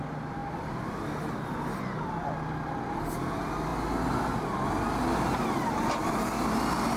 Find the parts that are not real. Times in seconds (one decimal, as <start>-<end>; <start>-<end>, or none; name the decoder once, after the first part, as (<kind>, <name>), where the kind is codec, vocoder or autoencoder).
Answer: none

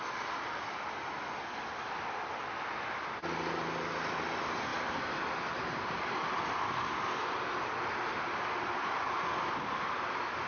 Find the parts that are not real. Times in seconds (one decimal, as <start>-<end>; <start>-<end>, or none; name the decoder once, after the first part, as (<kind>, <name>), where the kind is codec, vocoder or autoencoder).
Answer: 4.7-5.6 (vocoder, BigVGAN v2)

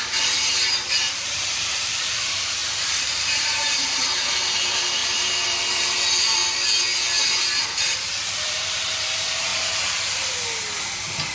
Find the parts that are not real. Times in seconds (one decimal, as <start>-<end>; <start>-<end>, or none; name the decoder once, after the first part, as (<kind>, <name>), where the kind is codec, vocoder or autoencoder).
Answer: 0.0-6.4 (vocoder, BigVGAN v2); 7.2-9.5; 10.8-11.3

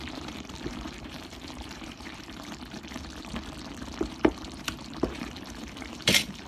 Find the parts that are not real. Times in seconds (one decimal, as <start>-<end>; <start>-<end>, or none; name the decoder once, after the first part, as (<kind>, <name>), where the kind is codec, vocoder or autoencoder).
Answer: 0.0-3.3 (vocoder, BigVGAN v2); 4.0-6.5